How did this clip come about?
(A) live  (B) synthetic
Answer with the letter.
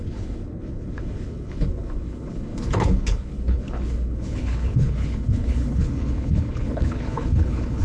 B